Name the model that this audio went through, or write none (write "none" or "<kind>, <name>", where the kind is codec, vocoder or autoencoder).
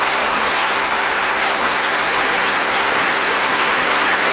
codec, SNAC